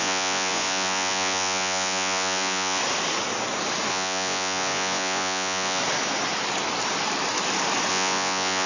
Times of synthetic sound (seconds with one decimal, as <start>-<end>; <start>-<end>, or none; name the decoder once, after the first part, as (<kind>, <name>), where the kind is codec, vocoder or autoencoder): 0.0-2.8 (vocoder, Vocos); 3.9-5.8; 7.9-8.7